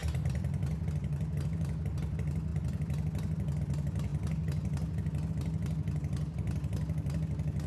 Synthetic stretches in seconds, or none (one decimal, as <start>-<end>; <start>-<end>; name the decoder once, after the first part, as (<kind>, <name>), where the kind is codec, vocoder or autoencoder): 0.0-0.9 (vocoder, BigVGAN v2); 2.5-3.6